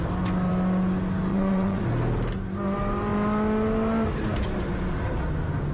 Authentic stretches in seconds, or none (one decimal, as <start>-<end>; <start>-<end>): 0.0-1.3; 1.8-5.7